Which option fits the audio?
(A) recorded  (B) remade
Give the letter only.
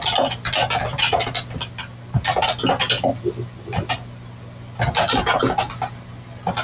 A